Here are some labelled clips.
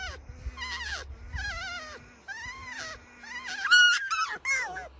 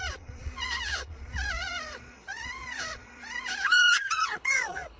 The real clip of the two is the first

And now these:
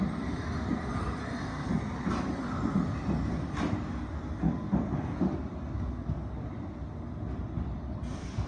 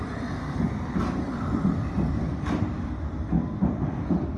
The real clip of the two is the first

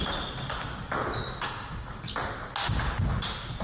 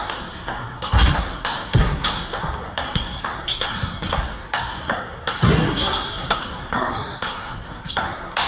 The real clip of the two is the first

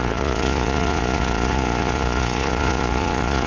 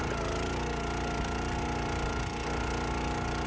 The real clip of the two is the second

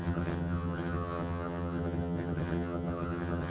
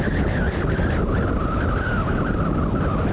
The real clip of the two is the second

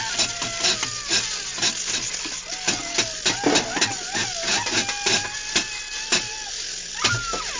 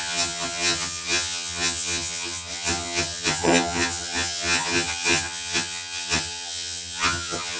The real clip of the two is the first